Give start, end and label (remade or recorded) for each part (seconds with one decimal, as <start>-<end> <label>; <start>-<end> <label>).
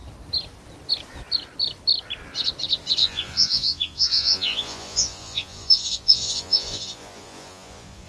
0.0-3.0 recorded; 3.0-8.1 remade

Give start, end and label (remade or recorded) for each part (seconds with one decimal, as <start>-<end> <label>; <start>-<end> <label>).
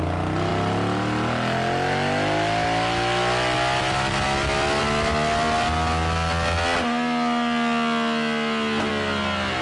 0.0-9.6 recorded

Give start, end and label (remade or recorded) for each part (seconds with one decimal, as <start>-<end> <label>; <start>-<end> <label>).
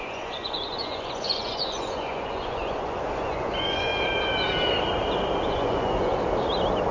0.0-3.9 remade; 3.9-5.5 recorded; 5.5-6.1 remade; 6.1-6.9 recorded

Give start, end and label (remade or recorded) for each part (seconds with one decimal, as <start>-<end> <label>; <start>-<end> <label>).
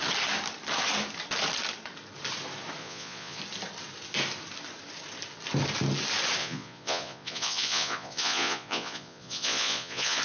0.0-2.8 recorded; 2.8-3.4 remade; 3.4-6.4 recorded; 6.4-10.2 remade